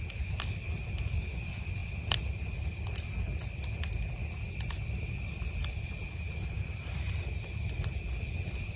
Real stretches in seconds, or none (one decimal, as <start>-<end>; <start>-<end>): 0.0-8.8